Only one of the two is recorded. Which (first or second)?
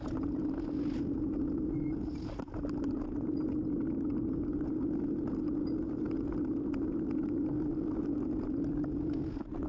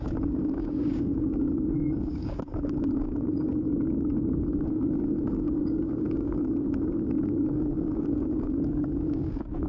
first